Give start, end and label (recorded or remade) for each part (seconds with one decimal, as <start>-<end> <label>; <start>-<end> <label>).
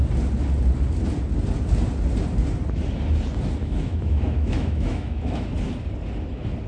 0.0-3.6 recorded; 3.6-5.5 remade; 5.5-6.7 recorded